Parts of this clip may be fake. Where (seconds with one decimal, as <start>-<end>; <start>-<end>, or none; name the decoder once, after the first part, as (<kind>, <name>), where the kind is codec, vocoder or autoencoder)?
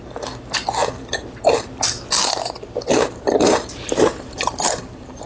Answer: 0.8-1.8 (vocoder, BigVGAN v2); 2.2-5.3